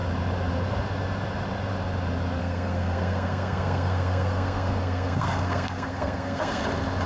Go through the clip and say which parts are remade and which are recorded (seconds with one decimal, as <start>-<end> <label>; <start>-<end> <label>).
0.0-2.4 recorded; 2.4-6.6 remade; 6.6-7.1 recorded